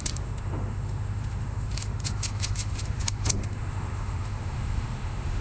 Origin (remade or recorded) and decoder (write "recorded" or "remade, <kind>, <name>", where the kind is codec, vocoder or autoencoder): remade, autoencoder, DAC-VAE